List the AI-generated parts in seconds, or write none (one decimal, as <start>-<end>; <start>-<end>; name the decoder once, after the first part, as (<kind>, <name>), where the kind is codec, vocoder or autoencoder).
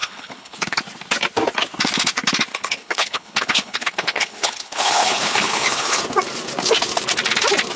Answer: 0.0-0.8 (codec, HILCodec); 2.5-6.0